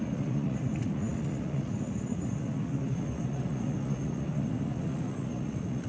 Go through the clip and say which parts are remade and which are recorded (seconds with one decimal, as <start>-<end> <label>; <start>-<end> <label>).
0.0-5.9 remade